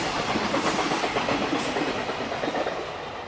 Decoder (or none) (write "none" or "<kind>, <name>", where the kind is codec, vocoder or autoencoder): none